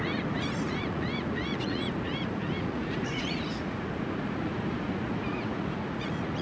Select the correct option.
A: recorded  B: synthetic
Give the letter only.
B